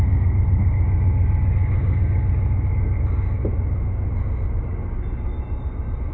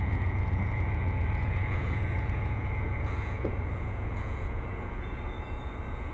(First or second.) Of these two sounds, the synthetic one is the second